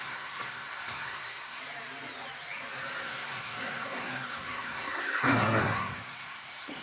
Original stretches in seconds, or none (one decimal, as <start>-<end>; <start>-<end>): 1.6-3.0